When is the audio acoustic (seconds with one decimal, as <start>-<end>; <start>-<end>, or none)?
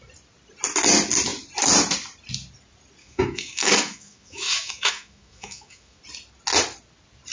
0.0-3.0; 6.0-7.3